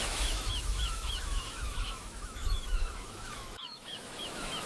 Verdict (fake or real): fake